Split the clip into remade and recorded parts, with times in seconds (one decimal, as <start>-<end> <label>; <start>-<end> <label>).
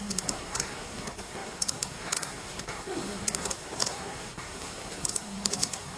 0.0-6.0 remade